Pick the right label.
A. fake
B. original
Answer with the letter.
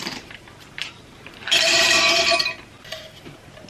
A